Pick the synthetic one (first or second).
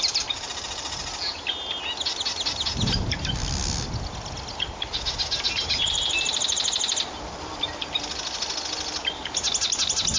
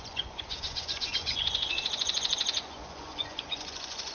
second